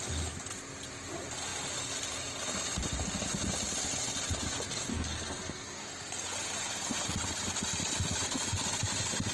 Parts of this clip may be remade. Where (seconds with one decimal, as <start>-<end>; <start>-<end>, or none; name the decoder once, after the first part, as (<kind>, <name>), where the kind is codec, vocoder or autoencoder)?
4.9-5.9 (codec, SNAC)